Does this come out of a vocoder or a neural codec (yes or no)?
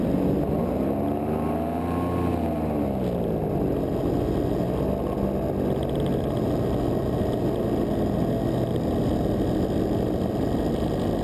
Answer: no